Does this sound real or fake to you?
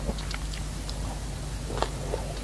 real